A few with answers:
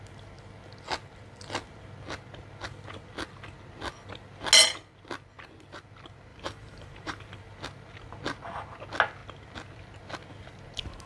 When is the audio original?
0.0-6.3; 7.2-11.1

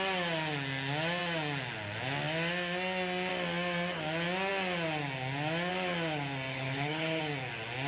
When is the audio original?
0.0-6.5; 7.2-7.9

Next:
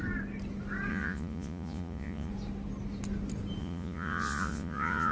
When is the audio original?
0.0-0.9; 2.3-3.6

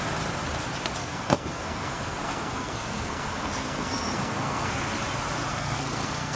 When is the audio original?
0.0-1.0; 4.8-5.5

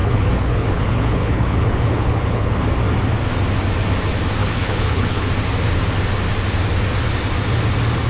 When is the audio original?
2.6-4.4; 5.3-8.1

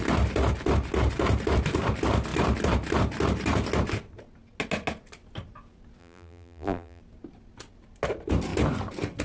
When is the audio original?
0.0-6.0; 7.0-9.2

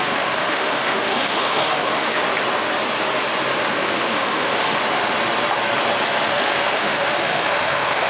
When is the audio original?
2.2-3.7; 4.8-6.3